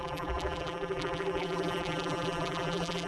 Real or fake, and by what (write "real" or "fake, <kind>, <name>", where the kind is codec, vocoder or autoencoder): fake, vocoder, BigVGAN v2